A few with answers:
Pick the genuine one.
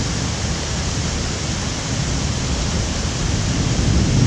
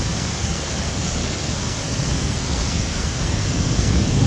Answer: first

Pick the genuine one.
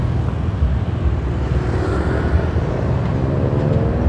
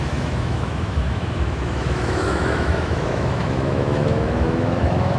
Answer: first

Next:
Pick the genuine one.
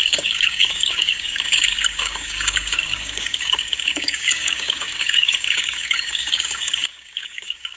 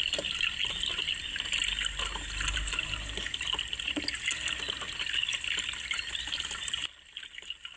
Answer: second